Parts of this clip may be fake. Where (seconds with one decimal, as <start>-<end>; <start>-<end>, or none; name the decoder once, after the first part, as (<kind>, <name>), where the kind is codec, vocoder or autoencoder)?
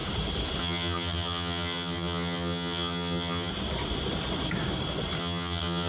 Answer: 0.6-3.5 (vocoder, HiFi-GAN); 5.2-5.9